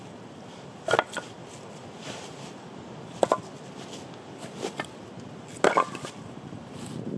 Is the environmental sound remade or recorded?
recorded